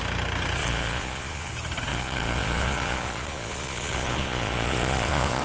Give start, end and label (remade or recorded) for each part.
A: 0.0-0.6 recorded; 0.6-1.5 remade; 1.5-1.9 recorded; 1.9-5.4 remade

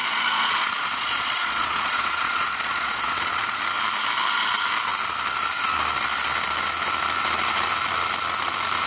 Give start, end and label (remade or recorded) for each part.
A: 0.0-3.6 remade; 3.6-8.9 recorded

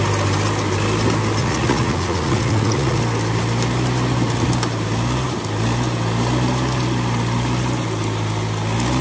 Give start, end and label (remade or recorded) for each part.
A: 0.0-1.4 recorded; 1.4-3.0 remade; 3.0-9.0 recorded

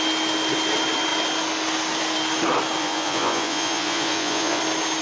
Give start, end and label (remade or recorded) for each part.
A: 0.0-2.8 recorded; 2.8-4.6 remade; 4.6-5.0 recorded